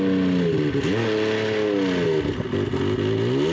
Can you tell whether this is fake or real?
real